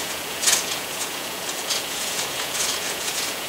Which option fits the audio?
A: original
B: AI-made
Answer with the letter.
B